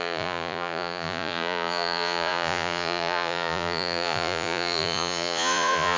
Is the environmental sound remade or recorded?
remade